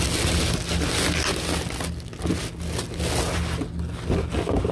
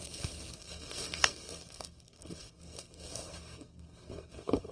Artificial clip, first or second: second